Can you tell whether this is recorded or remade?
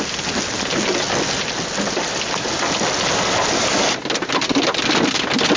recorded